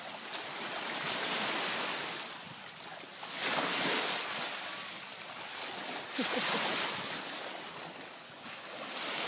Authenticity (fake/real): real